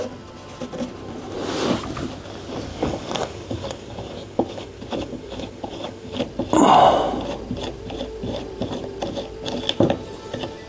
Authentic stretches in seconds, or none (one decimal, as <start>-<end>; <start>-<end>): 0.0-2.7; 6.2-10.7